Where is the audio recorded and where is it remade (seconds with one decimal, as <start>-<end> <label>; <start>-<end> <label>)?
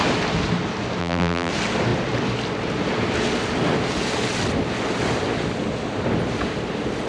0.0-1.0 recorded; 1.0-1.5 remade; 1.5-7.1 recorded